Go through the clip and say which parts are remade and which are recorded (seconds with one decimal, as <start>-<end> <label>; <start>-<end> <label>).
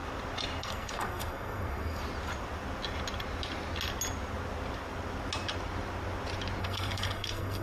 0.0-0.6 recorded; 0.6-2.0 remade; 2.0-6.6 recorded; 6.6-7.6 remade